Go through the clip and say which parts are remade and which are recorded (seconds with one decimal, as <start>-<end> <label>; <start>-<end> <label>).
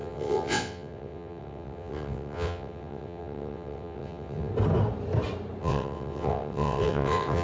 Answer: 0.0-4.5 remade; 4.5-5.6 recorded; 5.6-7.4 remade